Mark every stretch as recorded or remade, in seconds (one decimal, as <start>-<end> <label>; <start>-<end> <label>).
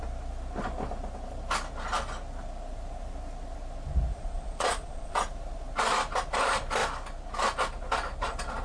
0.0-4.1 recorded; 4.1-5.2 remade; 5.2-8.6 recorded